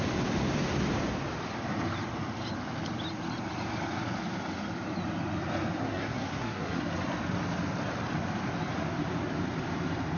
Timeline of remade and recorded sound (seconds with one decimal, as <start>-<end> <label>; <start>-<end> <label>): 0.0-5.8 recorded; 5.8-6.8 remade; 6.8-10.2 recorded